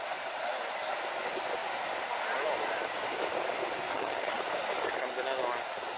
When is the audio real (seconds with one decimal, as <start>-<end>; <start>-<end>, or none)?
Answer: 0.0-3.9; 4.4-6.0